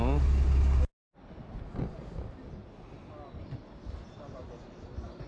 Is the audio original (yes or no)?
yes